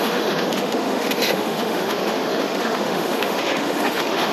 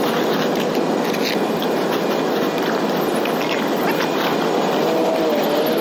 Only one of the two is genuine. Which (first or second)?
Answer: second